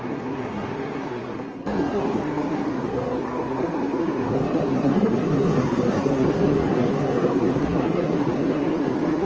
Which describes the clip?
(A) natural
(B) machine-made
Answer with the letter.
B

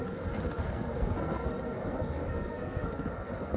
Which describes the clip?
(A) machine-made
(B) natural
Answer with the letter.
A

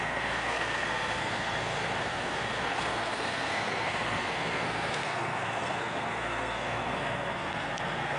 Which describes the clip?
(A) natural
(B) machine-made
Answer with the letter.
B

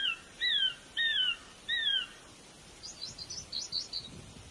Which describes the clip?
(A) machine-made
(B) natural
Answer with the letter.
B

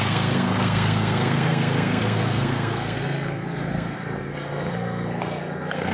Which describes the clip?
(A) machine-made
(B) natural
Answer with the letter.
A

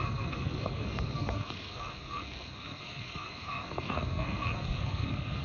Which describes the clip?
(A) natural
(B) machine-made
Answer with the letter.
B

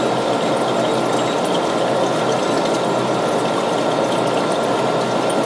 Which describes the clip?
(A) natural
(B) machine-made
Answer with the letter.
A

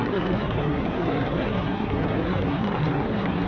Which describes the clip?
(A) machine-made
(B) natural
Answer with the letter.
A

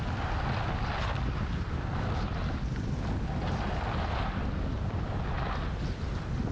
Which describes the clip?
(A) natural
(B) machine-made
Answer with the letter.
A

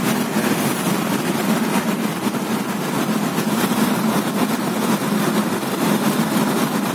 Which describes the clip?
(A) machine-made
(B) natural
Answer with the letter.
B